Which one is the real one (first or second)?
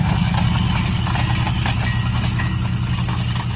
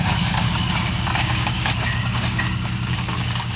first